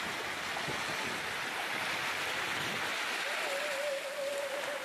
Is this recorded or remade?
recorded